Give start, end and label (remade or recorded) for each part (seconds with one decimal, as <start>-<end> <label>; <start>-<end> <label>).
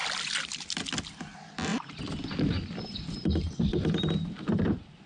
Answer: 0.0-0.8 remade; 0.8-1.7 recorded; 1.7-5.1 remade